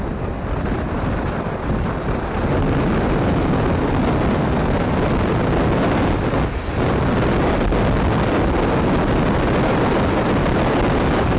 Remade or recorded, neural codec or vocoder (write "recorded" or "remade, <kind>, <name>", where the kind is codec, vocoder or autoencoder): recorded